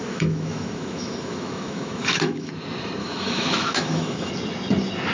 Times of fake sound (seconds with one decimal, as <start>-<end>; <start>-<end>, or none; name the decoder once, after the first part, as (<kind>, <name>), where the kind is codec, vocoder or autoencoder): 0.0-2.5 (autoencoder, DAC-VAE); 3.0-4.3